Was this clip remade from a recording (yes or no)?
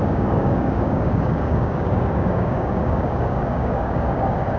yes